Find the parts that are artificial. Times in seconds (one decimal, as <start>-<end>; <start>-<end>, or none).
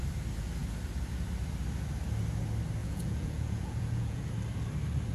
2.8-4.3